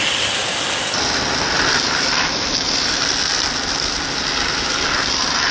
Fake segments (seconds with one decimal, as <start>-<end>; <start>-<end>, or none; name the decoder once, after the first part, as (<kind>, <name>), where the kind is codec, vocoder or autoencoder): none